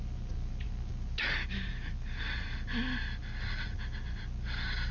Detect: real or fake real